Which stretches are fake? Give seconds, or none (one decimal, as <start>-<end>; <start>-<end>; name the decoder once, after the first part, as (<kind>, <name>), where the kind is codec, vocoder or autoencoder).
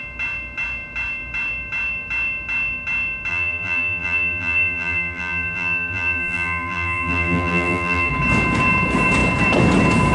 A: 3.3-8.1 (vocoder, BigVGAN v2)